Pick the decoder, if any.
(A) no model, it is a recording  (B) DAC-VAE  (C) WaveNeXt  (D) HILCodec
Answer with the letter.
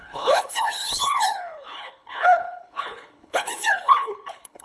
D